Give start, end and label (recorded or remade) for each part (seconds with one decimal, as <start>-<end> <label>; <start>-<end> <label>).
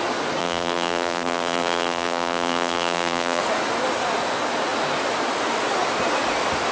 0.0-0.4 recorded; 0.4-3.4 remade; 3.4-6.7 recorded